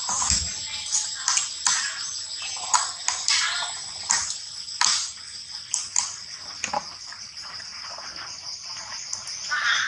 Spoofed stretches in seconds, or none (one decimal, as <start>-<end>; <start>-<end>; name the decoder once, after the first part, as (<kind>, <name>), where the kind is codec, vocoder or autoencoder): 5.9-7.3 (vocoder, BigVGAN v2)